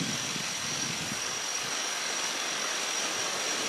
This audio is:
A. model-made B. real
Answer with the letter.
A